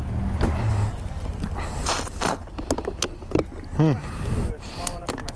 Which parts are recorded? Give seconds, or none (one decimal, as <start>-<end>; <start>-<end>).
0.0-0.9; 1.9-5.4